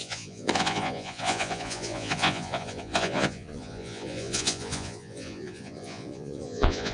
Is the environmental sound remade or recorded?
remade